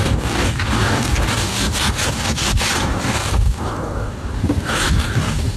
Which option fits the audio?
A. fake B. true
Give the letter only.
A